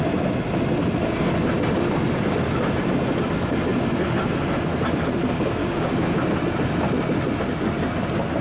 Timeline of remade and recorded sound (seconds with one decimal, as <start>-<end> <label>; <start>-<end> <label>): 0.0-5.6 recorded; 5.6-6.2 remade; 6.2-8.4 recorded